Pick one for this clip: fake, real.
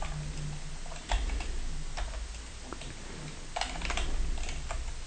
real